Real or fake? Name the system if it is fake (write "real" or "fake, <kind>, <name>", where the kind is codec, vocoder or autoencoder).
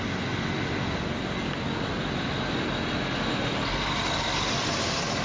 real